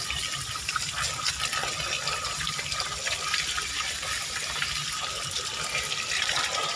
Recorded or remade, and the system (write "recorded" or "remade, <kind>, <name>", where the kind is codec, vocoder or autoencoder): recorded